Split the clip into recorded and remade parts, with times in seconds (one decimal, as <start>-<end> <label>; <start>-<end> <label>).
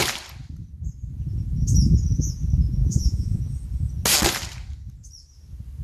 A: 0.0-2.8 recorded; 2.8-3.4 remade; 3.4-5.8 recorded